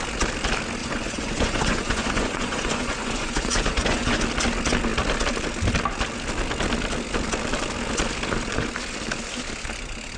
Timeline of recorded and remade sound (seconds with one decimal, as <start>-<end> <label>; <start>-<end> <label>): 0.0-0.8 recorded; 0.8-4.2 remade; 4.2-10.2 recorded